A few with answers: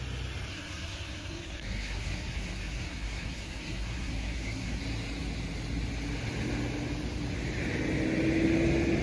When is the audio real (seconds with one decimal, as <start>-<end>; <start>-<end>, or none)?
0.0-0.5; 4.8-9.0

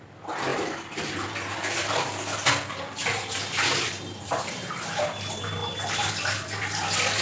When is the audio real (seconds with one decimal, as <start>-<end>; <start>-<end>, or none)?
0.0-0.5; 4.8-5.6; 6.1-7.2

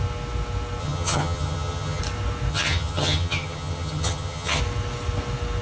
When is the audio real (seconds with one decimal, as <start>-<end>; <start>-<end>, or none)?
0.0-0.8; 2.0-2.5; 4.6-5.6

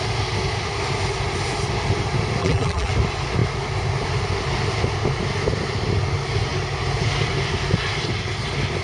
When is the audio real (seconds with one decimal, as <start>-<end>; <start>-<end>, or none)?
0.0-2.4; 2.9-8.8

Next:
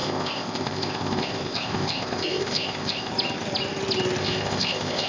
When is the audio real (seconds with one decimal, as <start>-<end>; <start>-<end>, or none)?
3.1-4.2

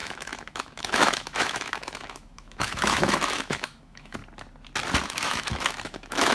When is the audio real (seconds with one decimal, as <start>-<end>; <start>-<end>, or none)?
4.2-5.0

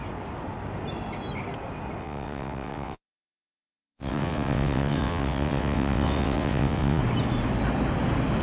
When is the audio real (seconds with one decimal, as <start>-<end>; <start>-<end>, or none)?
0.0-2.0; 7.0-8.4

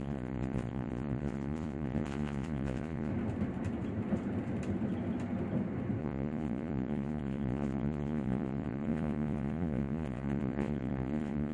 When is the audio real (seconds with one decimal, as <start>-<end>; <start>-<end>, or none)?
3.1-6.0